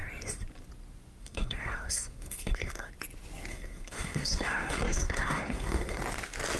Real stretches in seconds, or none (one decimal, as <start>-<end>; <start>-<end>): 0.0-1.2; 2.9-3.5; 6.0-6.6